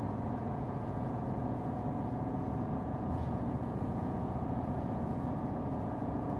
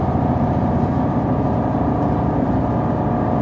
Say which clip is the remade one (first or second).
first